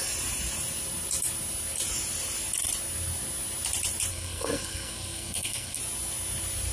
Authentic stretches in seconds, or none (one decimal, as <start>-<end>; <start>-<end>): 0.0-4.1; 5.8-6.7